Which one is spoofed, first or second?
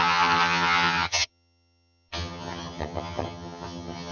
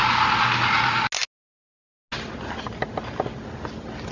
first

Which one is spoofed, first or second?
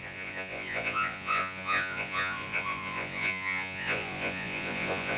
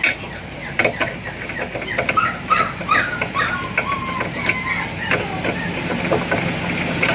first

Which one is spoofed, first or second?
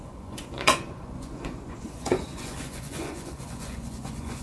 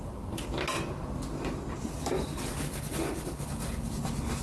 first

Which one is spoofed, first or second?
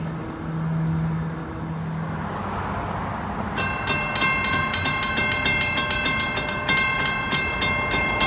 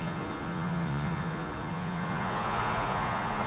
second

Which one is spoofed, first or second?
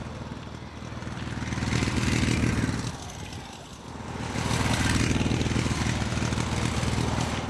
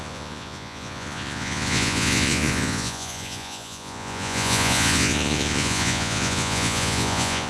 second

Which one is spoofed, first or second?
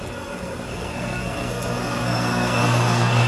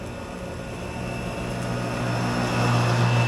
first